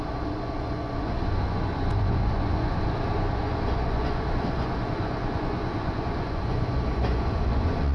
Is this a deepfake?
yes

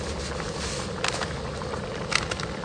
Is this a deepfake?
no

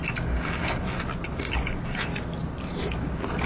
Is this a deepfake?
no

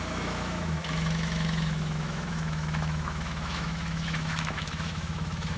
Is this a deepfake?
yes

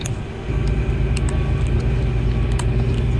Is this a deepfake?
no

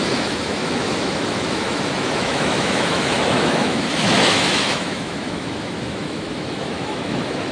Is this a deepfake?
yes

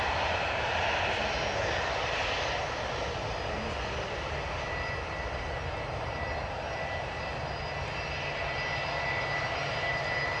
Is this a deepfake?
no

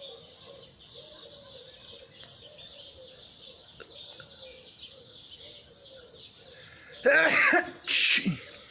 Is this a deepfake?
no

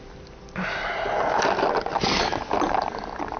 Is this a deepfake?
no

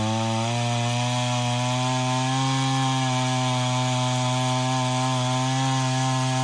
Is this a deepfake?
no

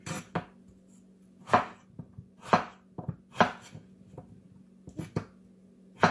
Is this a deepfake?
no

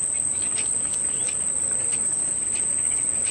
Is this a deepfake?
no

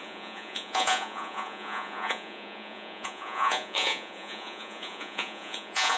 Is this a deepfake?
yes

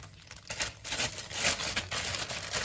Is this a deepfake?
no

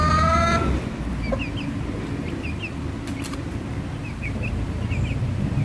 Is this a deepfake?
no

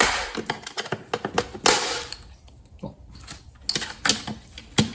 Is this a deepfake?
no